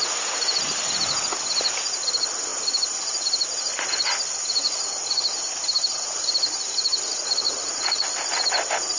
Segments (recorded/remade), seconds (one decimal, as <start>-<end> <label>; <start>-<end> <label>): 0.0-4.6 recorded; 4.6-5.2 remade; 5.2-7.1 recorded; 7.1-8.3 remade; 8.3-9.0 recorded